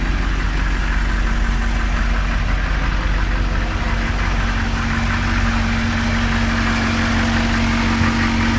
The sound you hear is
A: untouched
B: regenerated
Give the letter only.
A